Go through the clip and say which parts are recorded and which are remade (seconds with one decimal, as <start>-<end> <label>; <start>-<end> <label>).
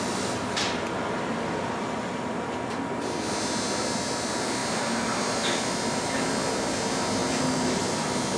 0.0-8.4 recorded